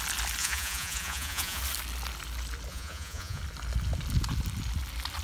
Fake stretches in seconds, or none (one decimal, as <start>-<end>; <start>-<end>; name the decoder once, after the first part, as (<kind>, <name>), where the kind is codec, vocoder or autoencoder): 0.4-1.6 (vocoder, Vocos); 2.7-3.4